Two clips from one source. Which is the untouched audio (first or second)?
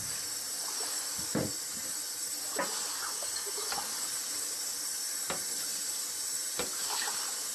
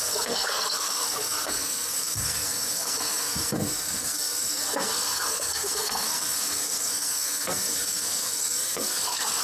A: first